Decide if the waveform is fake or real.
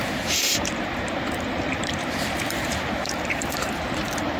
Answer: fake